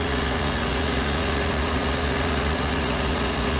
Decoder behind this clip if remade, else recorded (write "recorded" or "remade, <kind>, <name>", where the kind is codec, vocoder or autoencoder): remade, vocoder, Vocos